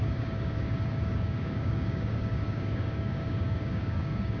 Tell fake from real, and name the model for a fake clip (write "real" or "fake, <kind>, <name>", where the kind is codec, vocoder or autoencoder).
fake, codec, DAC